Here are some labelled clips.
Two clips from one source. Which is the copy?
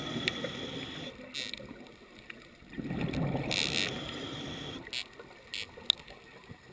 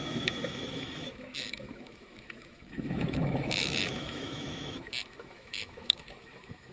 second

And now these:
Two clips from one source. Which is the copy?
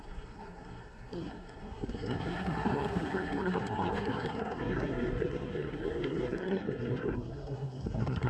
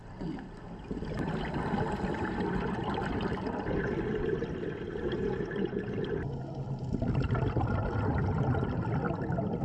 first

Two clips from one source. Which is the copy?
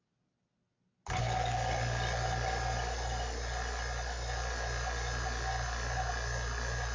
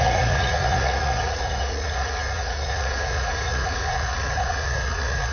second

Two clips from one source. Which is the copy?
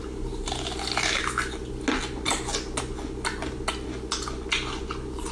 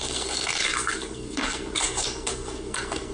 second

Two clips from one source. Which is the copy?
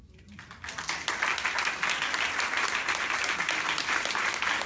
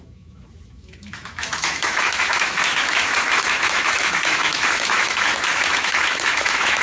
second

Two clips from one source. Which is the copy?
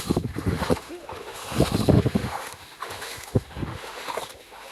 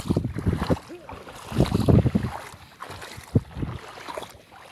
first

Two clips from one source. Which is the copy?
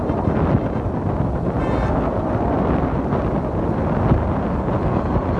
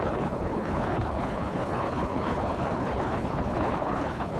second